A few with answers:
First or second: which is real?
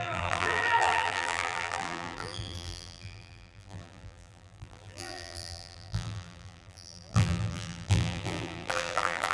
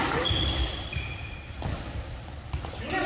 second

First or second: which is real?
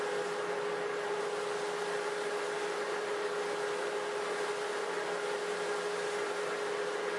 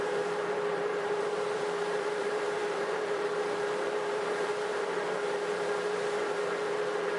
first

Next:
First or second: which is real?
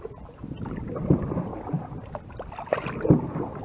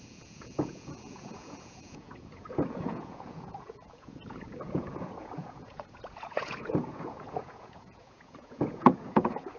first